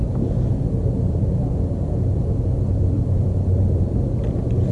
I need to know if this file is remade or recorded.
remade